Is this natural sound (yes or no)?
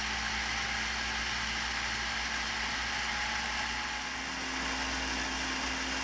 yes